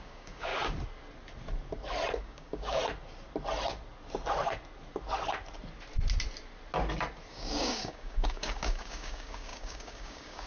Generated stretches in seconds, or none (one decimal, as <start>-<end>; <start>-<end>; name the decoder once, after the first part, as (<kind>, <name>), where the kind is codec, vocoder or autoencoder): 0.0-0.5 (codec, DAC); 2.2-2.8; 7.3-10.5